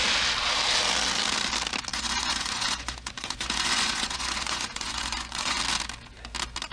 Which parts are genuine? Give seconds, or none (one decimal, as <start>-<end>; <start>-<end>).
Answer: 0.0-1.9; 5.6-6.7

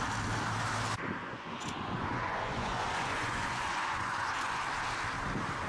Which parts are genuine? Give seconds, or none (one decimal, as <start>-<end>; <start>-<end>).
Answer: 0.0-1.2; 4.6-5.7